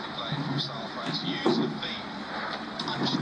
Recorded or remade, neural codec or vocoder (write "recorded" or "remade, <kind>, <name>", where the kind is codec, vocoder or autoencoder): remade, vocoder, BigVGAN v2